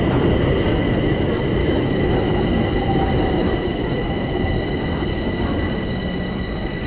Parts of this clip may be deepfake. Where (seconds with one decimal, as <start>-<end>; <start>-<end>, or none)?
1.6-2.2; 3.4-4.4

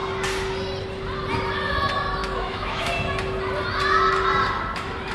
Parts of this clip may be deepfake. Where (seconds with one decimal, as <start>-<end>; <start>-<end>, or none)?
2.2-2.9

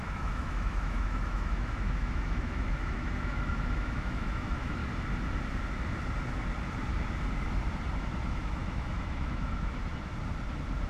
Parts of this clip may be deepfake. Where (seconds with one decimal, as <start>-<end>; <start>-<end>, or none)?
0.0-4.8; 8.0-9.8